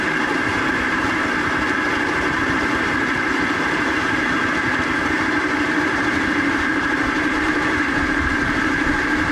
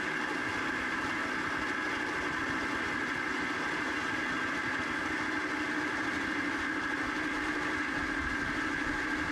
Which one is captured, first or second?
second